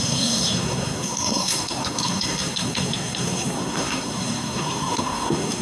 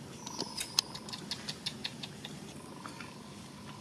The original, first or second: second